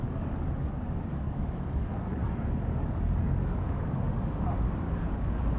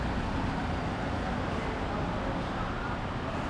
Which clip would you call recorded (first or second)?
second